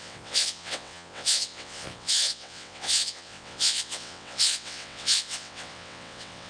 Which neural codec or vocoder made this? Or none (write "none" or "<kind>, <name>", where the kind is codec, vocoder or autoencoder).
vocoder, WaveNeXt